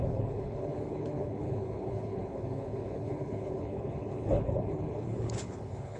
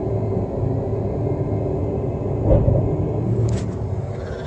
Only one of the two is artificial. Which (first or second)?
first